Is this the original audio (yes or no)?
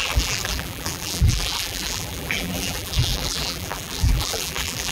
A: no